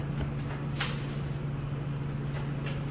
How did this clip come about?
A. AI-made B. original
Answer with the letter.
B